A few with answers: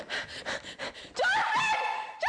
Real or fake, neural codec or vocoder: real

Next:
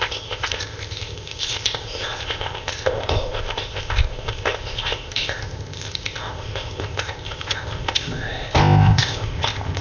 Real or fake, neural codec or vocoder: fake, codec, ZipCodec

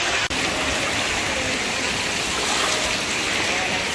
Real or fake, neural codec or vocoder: real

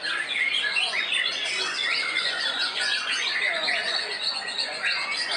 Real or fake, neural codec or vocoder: fake, vocoder, Vocos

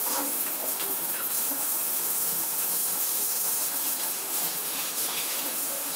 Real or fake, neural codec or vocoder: fake, autoencoder, DAC-VAE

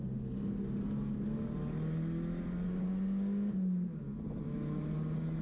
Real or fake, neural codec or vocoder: real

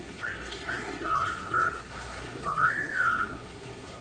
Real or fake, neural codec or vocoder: fake, codec, SNAC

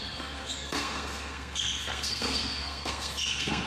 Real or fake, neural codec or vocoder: fake, codec, SNAC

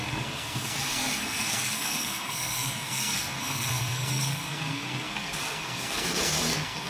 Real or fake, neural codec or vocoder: fake, codec, SNAC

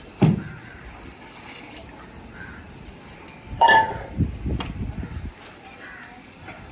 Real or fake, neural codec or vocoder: fake, vocoder, BigVGAN v2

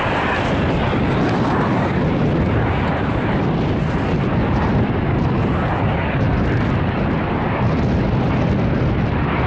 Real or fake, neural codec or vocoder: real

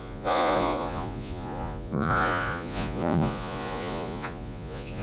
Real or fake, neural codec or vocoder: fake, vocoder, Vocos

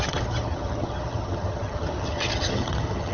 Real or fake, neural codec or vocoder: fake, vocoder, HiFi-GAN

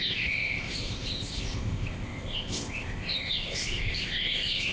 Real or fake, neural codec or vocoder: fake, codec, ZipCodec